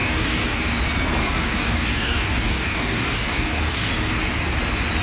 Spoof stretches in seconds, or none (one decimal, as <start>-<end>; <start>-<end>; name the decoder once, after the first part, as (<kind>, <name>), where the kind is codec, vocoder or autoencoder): 0.0-0.6 (codec, DAC); 1.2-3.9